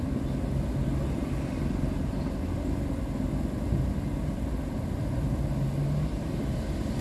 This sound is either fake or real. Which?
real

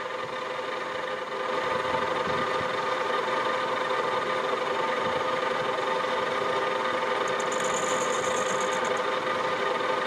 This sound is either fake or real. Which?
real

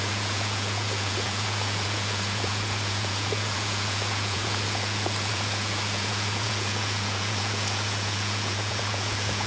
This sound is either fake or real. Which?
fake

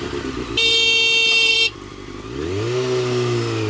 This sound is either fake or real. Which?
real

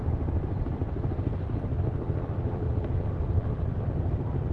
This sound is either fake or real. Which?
fake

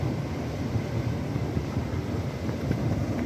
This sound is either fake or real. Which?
real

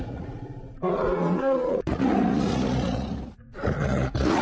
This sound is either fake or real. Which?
fake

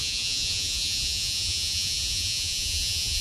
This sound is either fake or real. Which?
fake